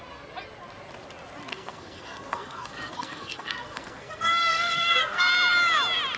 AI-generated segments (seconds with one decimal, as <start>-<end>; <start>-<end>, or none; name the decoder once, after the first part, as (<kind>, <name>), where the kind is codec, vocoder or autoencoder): 1.5-5.2 (codec, SNAC)